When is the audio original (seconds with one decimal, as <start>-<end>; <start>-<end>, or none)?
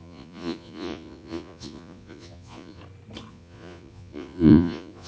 2.8-3.3